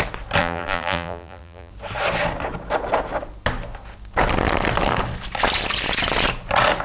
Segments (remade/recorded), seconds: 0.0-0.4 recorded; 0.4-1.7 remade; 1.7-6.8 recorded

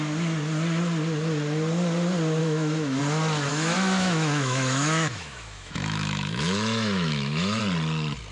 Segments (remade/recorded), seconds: 0.0-2.4 recorded; 2.4-3.0 remade; 3.0-3.5 recorded; 3.5-7.6 remade; 7.6-8.3 recorded

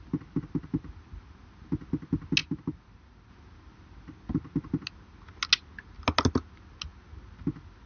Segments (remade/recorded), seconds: 0.0-7.9 recorded

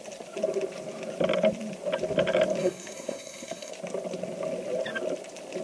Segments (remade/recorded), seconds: 0.0-2.6 recorded; 2.6-3.7 remade; 3.7-5.6 recorded

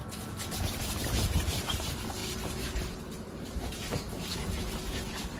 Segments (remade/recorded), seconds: 0.0-0.8 recorded; 0.8-5.4 remade